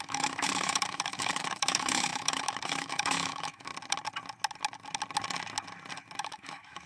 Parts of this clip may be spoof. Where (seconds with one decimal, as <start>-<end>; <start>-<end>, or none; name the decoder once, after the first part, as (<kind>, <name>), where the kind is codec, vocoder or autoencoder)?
0.0-3.7 (autoencoder, DAC-VAE); 6.2-6.9